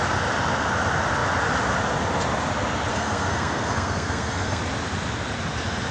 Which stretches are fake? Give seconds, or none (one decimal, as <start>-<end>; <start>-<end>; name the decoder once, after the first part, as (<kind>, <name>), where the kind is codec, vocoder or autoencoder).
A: 2.9-4.6 (codec, SNAC)